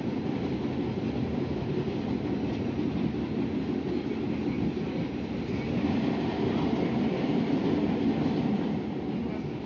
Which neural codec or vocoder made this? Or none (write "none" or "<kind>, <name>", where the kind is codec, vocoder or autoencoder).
none